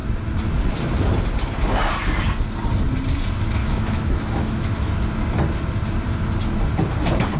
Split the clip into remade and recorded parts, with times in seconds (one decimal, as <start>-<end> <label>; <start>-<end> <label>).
0.0-3.6 recorded; 3.6-4.9 remade; 4.9-7.4 recorded